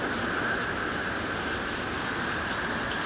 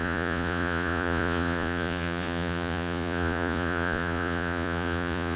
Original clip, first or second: first